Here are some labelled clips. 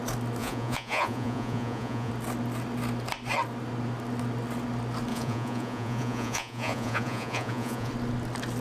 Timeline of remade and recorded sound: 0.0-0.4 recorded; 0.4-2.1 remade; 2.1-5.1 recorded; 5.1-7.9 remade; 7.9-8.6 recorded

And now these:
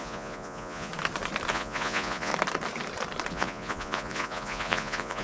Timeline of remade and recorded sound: 0.0-0.9 remade; 0.9-1.5 recorded; 1.5-2.3 remade; 2.3-3.3 recorded; 3.3-5.2 remade

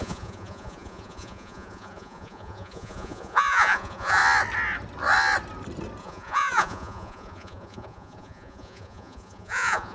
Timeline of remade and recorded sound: 0.0-4.2 remade; 4.2-6.0 recorded; 6.0-9.9 remade

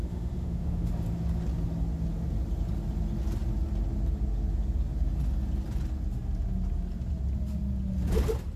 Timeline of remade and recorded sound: 0.0-0.9 remade; 0.9-8.6 recorded